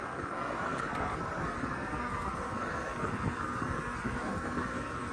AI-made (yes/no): yes